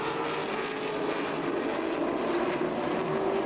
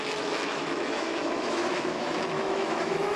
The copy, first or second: second